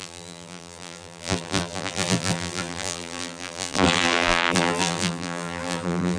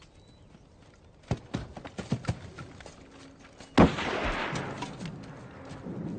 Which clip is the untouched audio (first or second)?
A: second